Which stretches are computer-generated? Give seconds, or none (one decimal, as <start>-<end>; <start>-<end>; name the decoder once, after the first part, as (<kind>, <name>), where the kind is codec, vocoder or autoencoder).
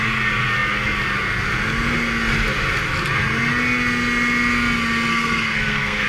5.1-6.1 (codec, SNAC)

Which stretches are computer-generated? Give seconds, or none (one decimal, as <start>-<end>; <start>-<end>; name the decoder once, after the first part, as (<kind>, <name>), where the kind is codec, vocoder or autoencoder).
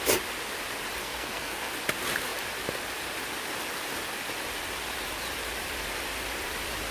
1.0-1.7 (codec, SNAC)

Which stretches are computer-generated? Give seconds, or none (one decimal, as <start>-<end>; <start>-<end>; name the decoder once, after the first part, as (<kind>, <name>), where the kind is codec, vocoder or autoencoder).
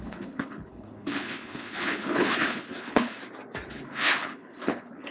0.0-3.2 (codec, HILCodec); 3.7-5.1